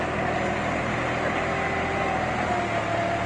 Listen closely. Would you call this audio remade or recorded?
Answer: recorded